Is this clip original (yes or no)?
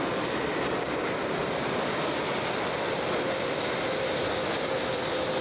yes